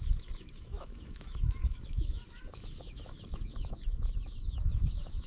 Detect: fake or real fake